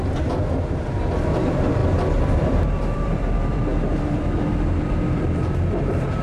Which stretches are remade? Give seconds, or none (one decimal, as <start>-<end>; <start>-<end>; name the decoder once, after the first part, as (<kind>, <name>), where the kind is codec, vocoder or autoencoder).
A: 0.0-1.8 (vocoder, BigVGAN v2); 2.3-6.2